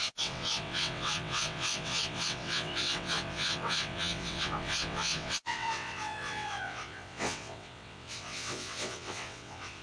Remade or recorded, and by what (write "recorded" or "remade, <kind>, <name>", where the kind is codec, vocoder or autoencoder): remade, vocoder, WaveNeXt